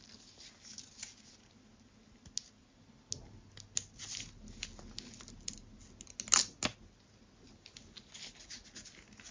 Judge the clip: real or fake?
real